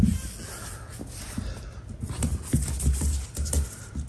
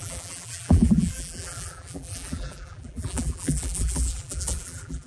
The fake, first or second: second